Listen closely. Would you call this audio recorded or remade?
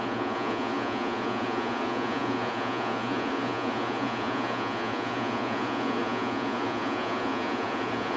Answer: remade